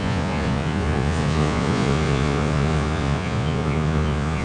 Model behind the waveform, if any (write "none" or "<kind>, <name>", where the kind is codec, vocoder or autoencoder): vocoder, Vocos